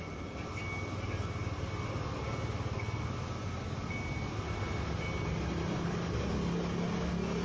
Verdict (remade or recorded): recorded